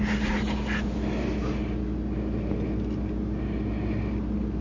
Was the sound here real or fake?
real